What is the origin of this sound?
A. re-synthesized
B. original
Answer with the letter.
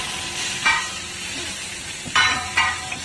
A